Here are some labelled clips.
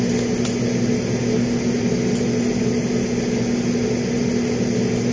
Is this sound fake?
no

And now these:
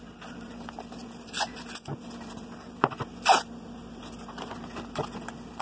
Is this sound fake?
no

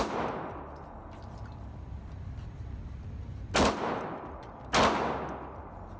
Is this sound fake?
no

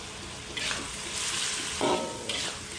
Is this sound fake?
no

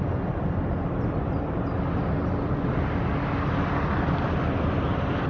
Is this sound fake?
no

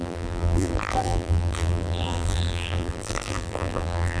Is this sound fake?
yes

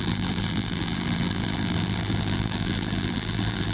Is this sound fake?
yes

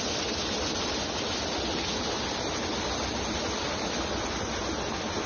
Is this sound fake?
no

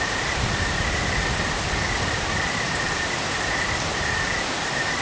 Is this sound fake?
no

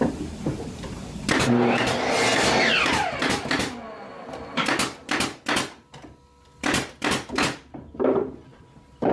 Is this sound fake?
no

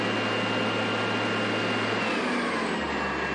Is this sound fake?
no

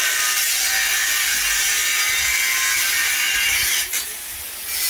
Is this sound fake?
no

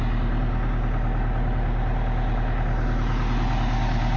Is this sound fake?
no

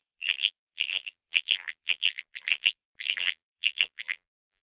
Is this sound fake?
yes